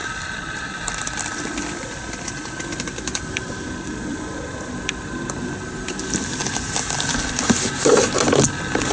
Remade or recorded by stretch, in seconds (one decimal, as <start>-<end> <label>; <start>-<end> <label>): 0.0-4.8 remade; 4.8-8.9 recorded